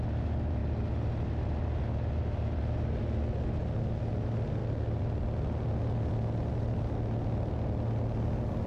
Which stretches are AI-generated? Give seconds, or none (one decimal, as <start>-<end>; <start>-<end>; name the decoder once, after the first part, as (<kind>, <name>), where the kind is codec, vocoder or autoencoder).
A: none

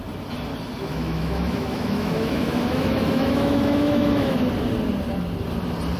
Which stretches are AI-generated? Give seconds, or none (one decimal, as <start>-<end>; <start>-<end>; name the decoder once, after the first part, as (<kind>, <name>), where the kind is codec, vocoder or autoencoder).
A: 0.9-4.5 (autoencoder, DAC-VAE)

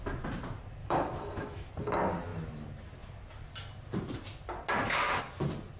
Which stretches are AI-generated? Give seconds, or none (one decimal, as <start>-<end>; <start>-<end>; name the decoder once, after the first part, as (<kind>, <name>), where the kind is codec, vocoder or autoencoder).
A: 0.8-1.7 (autoencoder, DAC-VAE)